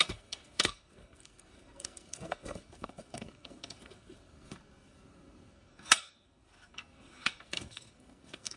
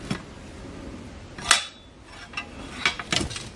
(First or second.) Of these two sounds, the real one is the second